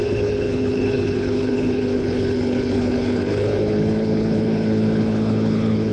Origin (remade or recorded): remade